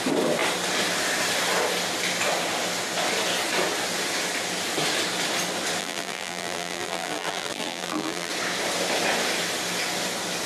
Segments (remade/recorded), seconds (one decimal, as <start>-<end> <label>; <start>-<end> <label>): 0.0-5.8 recorded; 5.8-8.3 remade; 8.3-10.5 recorded